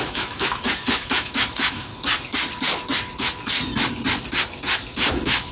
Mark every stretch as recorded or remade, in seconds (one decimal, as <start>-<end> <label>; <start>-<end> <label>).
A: 0.0-1.9 remade; 1.9-5.1 recorded; 5.1-5.5 remade